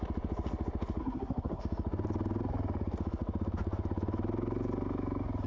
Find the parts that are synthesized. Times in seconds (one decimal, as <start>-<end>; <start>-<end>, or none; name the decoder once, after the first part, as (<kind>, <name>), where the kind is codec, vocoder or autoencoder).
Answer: 1.0-1.6 (codec, SNAC)

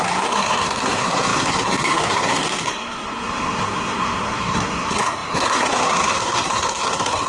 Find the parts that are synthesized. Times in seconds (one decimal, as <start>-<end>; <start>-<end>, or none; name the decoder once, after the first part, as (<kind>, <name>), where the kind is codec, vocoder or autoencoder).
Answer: 0.0-7.3 (codec, SNAC)

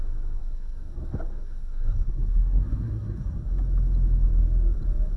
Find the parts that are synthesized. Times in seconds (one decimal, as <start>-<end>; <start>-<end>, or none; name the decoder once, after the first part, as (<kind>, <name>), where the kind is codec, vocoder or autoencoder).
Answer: 0.4-3.5 (codec, SNAC)